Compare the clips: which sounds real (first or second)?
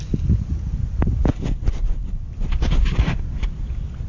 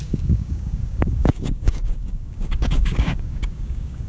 first